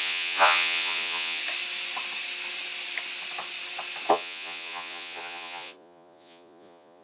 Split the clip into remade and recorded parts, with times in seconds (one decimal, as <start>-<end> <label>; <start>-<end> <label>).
0.0-1.4 remade; 1.4-4.1 recorded; 4.1-7.0 remade